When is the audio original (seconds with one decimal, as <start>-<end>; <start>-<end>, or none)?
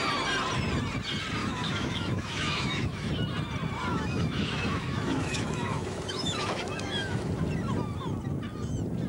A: 0.0-1.4; 3.1-3.9; 7.3-9.1